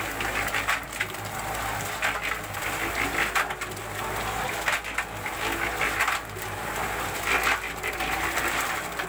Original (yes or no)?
yes